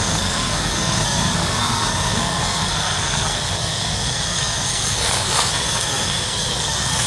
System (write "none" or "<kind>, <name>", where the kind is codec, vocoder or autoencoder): codec, SNAC